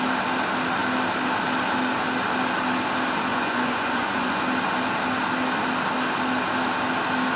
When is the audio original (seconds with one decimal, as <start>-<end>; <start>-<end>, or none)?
0.0-3.3; 4.4-7.4